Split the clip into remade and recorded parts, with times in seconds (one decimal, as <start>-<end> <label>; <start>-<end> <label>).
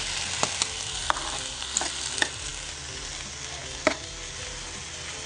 0.0-5.3 recorded